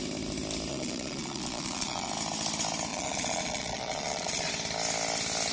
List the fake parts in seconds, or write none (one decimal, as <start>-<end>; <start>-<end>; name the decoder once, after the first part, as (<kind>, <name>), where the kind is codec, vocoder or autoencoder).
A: 0.7-2.1 (vocoder, Vocos); 2.9-4.5